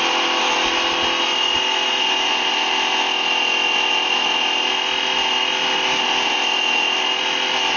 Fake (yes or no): no